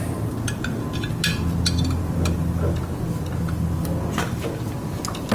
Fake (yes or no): no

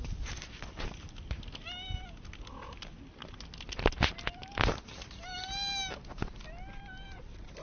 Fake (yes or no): no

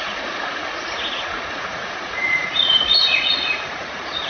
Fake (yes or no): yes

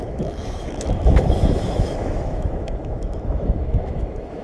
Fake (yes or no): yes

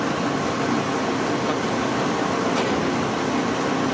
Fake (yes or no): no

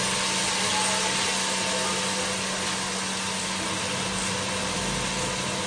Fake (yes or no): no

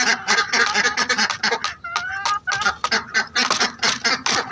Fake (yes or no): no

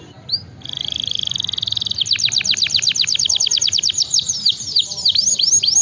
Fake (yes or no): no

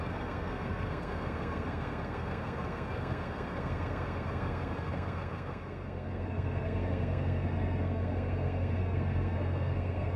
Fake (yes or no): yes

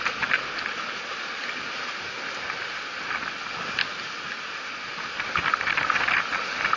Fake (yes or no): no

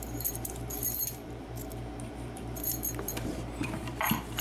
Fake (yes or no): yes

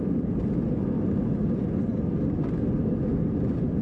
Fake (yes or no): no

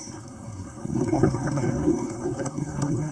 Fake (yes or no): yes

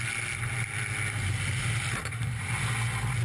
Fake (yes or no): no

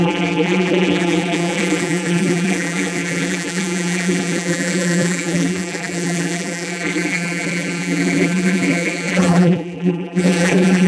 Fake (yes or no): yes